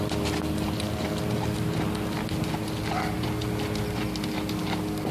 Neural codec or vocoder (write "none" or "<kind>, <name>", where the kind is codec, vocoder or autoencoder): none